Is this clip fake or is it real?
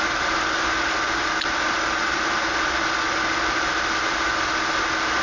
real